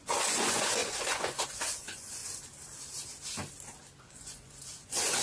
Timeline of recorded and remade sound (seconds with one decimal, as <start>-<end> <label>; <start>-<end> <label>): 0.0-2.2 remade; 2.2-4.0 recorded; 4.0-5.2 remade